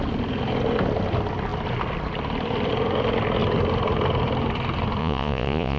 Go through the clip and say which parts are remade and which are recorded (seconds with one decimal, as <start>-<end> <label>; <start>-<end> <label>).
0.0-5.0 recorded; 5.0-5.8 remade